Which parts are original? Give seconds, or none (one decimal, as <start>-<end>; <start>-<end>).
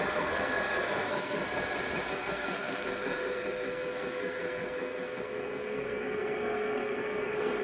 1.4-2.1